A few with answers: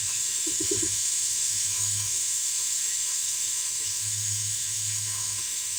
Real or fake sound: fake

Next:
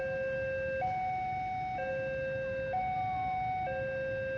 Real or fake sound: real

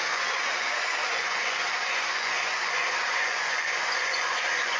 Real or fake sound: fake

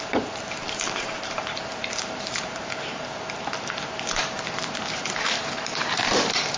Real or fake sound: fake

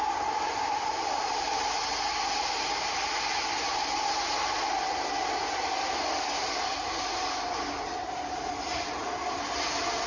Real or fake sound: real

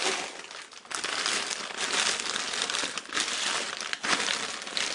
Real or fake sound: real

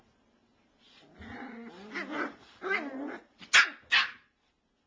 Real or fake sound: real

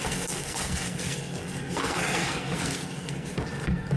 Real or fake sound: fake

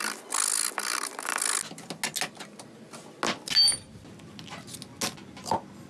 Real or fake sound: real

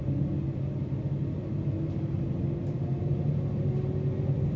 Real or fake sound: real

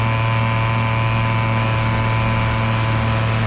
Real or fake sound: real